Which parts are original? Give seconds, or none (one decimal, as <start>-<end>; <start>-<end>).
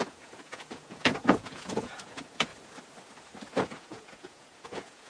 2.5-3.6